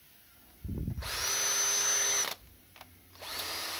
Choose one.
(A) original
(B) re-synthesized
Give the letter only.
A